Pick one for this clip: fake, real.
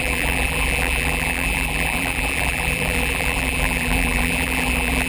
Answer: fake